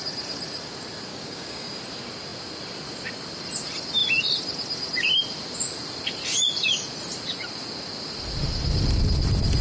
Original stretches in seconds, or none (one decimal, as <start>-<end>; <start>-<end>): 0.0-1.1; 1.8-9.6